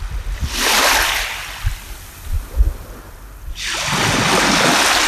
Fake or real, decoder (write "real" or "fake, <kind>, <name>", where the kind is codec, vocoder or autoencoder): real